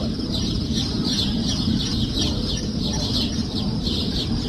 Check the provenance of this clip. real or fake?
fake